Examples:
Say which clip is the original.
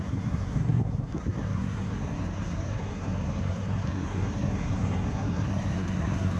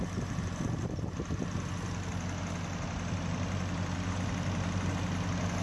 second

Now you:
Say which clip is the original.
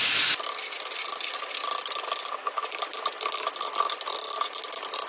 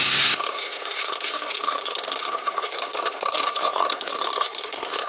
first